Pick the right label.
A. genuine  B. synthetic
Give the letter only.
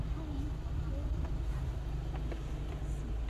A